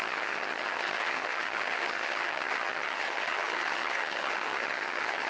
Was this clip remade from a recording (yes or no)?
yes